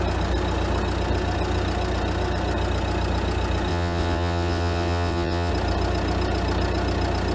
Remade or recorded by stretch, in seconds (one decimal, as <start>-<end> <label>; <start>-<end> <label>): 0.0-3.7 recorded; 3.7-5.5 remade; 5.5-7.3 recorded